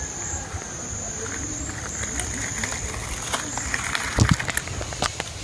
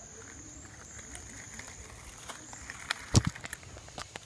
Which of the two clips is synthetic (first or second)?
second